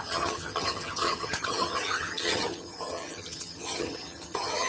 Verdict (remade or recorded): remade